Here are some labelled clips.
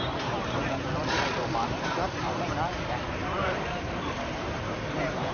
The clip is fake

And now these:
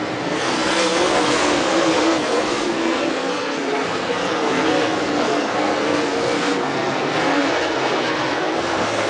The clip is fake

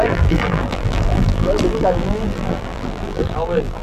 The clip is fake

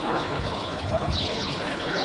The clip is fake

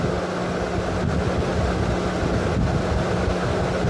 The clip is real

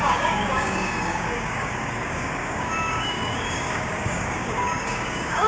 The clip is fake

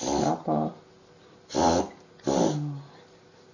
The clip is real